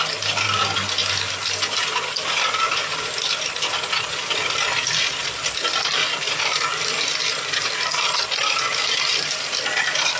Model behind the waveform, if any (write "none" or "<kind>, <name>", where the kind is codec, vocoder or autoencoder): none